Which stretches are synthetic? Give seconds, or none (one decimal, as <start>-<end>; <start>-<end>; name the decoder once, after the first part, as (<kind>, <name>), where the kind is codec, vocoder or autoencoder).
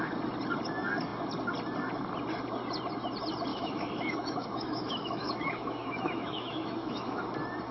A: 3.5-7.2 (autoencoder, DAC-VAE)